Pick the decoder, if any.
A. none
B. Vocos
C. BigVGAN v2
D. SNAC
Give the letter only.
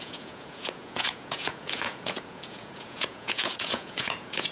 B